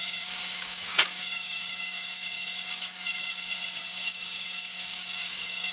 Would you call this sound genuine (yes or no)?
no